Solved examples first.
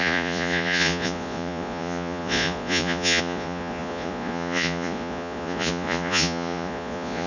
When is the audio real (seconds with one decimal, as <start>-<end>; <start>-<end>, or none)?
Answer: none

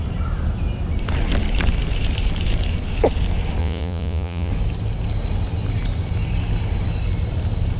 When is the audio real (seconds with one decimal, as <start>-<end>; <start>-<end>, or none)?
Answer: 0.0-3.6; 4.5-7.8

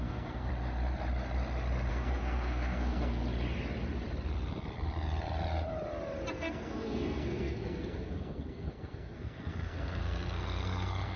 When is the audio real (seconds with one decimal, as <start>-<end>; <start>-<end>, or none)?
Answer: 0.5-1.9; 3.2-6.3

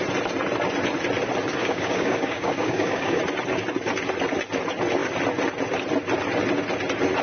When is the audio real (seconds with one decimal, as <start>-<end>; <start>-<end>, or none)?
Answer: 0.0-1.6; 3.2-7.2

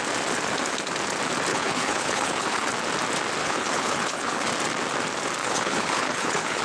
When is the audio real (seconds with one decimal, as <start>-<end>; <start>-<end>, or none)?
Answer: 0.0-1.5; 2.7-3.4; 4.5-5.4